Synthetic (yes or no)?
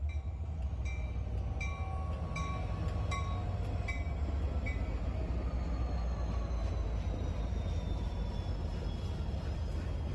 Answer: no